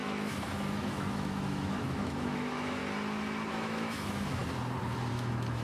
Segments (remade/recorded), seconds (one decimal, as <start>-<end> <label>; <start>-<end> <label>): 0.0-2.8 remade; 2.8-3.5 recorded; 3.5-4.4 remade; 4.4-5.1 recorded; 5.1-5.6 remade